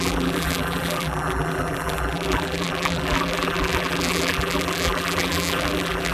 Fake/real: fake